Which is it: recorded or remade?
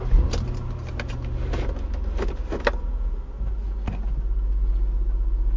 recorded